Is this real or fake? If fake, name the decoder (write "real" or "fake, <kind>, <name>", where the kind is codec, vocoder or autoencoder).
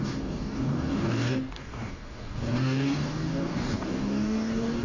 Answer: fake, codec, DAC